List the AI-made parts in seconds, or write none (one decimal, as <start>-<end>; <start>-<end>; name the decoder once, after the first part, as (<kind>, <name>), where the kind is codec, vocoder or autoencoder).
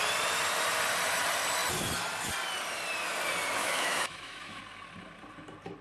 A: 3.6-4.6 (autoencoder, DAC-VAE)